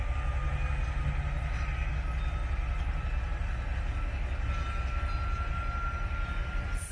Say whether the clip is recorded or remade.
recorded